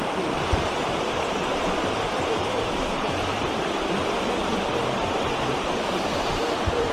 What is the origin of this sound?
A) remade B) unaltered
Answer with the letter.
A